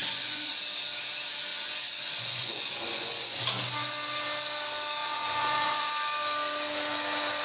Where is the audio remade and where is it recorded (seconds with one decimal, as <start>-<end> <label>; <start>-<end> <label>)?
0.0-0.6 remade; 0.6-1.5 recorded; 1.5-3.4 remade; 3.4-5.0 recorded; 5.0-5.9 remade; 5.9-7.4 recorded